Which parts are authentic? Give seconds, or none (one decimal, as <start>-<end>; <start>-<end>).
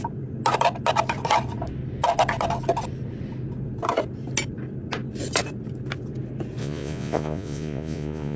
0.0-6.6